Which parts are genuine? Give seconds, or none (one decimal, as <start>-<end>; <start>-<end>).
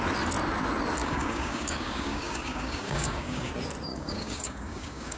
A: 0.0-1.0; 3.5-3.9